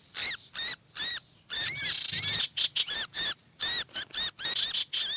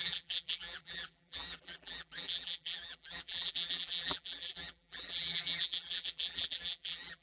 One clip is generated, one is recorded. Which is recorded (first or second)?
first